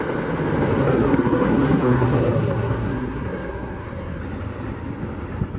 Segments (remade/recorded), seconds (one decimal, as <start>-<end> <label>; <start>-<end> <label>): 0.0-0.8 recorded; 0.8-4.2 remade; 4.2-5.6 recorded